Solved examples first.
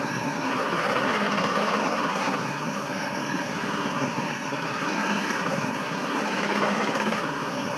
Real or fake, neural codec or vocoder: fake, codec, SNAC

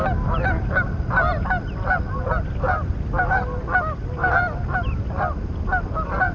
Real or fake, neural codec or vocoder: real